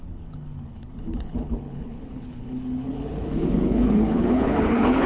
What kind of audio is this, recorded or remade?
remade